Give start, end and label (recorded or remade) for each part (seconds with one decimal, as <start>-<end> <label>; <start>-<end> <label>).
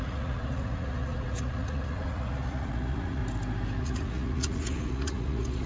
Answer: 0.0-3.2 remade; 3.2-3.8 recorded; 3.8-5.7 remade